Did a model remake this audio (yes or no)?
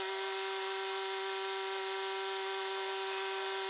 no